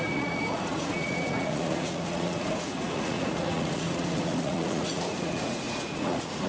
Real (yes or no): no